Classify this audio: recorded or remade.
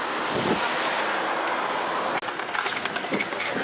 recorded